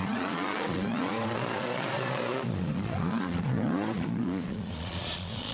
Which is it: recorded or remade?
remade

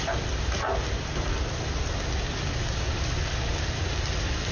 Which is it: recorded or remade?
recorded